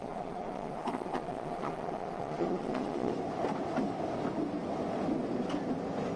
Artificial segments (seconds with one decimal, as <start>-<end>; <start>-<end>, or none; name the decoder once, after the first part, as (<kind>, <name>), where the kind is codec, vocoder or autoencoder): 0.0-3.1 (vocoder, Vocos)